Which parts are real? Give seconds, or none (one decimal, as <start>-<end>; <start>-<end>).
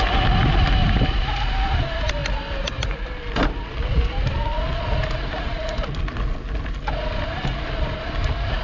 0.0-8.6